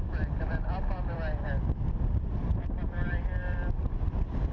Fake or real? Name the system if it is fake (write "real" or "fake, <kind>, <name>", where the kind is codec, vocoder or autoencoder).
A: fake, vocoder, BigVGAN v2